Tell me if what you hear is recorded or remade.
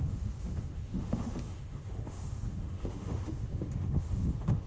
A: remade